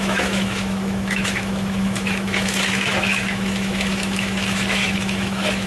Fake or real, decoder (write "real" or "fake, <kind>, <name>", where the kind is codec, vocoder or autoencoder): fake, autoencoder, DAC-VAE